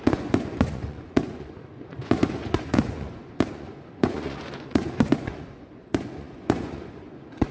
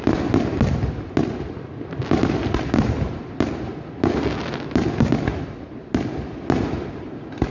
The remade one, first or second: first